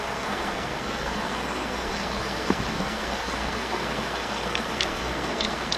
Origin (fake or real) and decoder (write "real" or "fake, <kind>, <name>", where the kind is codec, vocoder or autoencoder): fake, codec, SNAC